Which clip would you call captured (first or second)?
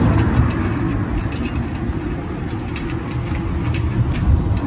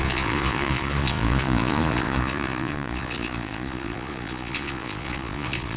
first